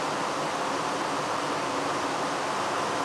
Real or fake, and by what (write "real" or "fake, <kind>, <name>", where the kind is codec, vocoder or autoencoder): real